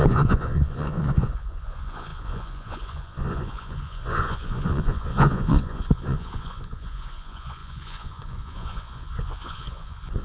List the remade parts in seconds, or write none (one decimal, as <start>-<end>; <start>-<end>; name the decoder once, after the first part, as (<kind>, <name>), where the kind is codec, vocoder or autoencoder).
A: 0.0-10.2 (vocoder, Vocos)